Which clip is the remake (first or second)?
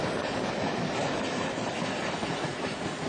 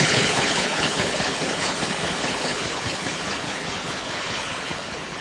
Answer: second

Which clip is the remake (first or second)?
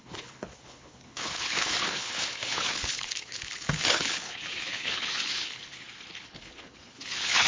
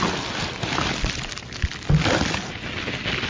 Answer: first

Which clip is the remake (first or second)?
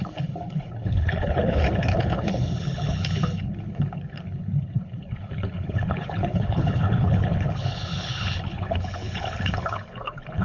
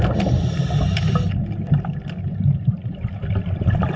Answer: first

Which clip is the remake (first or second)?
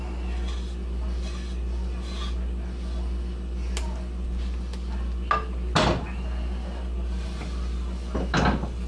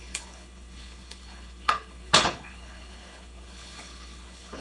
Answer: second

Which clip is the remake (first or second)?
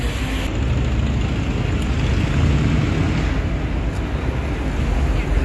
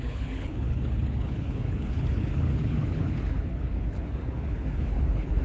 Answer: second